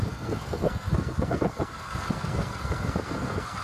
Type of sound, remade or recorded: remade